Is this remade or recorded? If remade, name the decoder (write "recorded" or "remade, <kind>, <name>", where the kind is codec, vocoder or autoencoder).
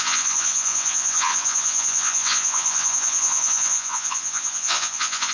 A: remade, vocoder, Vocos